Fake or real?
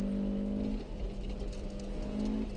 real